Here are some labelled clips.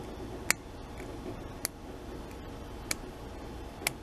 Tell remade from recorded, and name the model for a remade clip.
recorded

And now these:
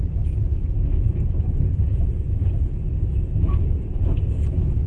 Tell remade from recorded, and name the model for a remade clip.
remade, vocoder, Vocos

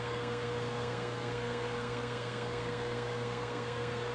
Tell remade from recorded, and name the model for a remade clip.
remade, codec, SNAC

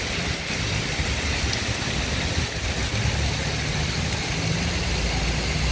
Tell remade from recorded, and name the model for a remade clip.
recorded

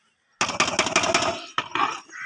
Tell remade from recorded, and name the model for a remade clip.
recorded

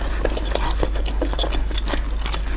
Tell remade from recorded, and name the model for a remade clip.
recorded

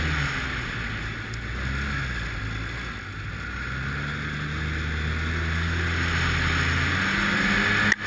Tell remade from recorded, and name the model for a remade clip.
recorded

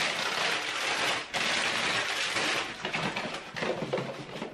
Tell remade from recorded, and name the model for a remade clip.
recorded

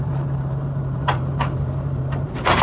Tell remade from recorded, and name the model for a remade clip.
remade, vocoder, BigVGAN v2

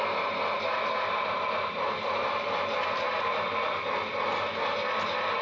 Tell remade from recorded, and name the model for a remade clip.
recorded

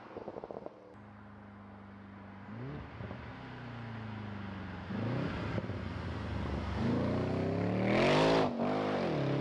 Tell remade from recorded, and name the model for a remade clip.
recorded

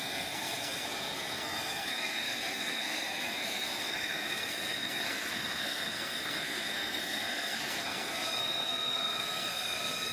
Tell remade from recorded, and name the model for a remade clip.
remade, codec, SNAC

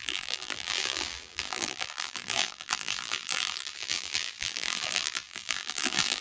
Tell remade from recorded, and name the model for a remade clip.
remade, vocoder, BigVGAN v2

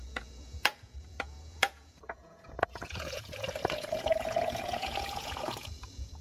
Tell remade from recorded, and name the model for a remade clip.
remade, vocoder, Vocos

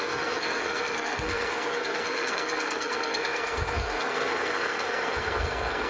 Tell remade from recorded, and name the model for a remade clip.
remade, codec, SNAC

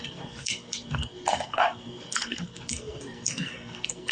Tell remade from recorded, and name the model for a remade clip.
remade, codec, SNAC